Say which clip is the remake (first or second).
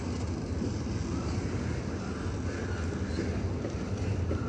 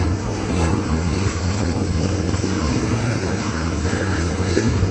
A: second